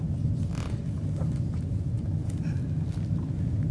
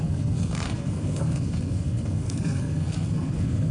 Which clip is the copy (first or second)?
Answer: second